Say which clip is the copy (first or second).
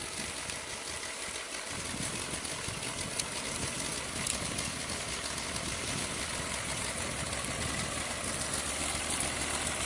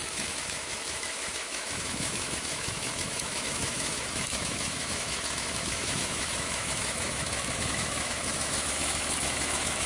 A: second